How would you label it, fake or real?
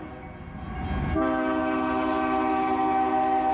real